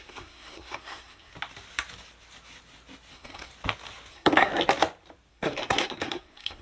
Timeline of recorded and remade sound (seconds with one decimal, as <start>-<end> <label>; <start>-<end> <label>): 0.0-1.3 remade; 1.3-3.1 recorded; 3.1-3.5 remade; 3.5-4.1 recorded; 4.1-4.5 remade; 4.5-5.3 recorded; 5.3-6.6 remade